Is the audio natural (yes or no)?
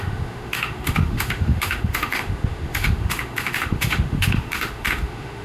no